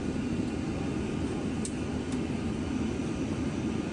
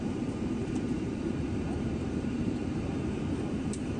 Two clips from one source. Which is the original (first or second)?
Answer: first